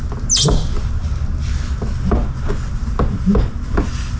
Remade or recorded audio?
recorded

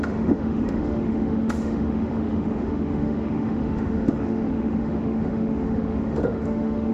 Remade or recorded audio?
remade